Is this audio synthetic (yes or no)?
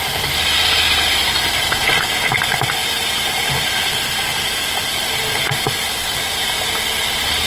no